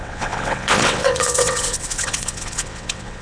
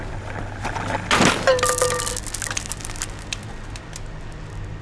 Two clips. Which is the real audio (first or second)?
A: second